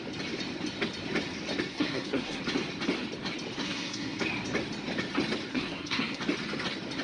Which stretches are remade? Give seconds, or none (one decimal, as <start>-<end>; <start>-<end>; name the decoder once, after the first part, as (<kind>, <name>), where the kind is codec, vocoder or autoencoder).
1.7-2.4 (codec, SNAC); 3.6-4.2; 5.5-6.2